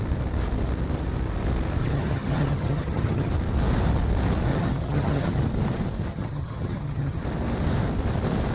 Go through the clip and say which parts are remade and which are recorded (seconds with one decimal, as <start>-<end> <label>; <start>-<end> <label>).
0.0-1.8 recorded; 1.8-3.3 remade; 3.3-4.5 recorded; 4.5-5.4 remade; 5.4-6.1 recorded; 6.1-7.2 remade; 7.2-8.5 recorded